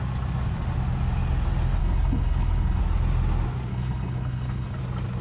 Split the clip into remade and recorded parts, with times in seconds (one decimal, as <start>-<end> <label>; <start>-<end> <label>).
0.0-1.8 recorded; 1.8-2.8 remade; 2.8-3.7 recorded; 3.7-4.8 remade; 4.8-5.2 recorded